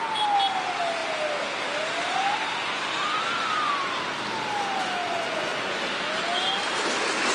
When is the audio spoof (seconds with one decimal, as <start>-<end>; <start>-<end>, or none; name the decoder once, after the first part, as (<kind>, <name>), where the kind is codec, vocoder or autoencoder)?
2.6-4.0 (vocoder, Vocos); 5.0-5.8

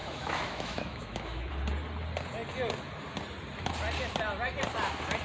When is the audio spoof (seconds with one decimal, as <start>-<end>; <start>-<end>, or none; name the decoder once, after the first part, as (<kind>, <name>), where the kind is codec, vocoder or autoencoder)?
0.0-1.5 (autoencoder, DAC-VAE)

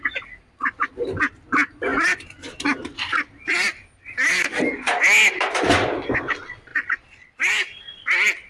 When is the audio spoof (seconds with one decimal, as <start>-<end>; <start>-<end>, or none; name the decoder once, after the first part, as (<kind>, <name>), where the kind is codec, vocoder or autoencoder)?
1.9-4.6 (vocoder, BigVGAN v2); 6.7-7.8

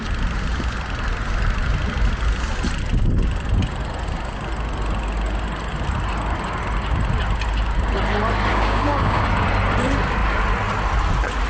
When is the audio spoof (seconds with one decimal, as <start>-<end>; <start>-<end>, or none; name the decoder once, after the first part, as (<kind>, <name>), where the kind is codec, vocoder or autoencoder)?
8.5-9.2 (codec, DAC)

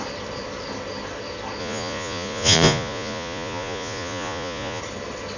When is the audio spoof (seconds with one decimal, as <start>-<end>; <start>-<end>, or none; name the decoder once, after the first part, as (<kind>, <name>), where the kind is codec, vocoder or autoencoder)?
1.6-4.8 (vocoder, Vocos)

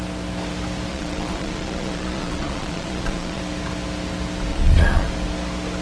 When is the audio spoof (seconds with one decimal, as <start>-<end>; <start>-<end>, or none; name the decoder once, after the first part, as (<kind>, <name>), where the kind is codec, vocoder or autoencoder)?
0.9-3.4 (vocoder, Vocos); 4.5-5.1